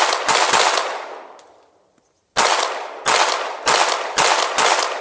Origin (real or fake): real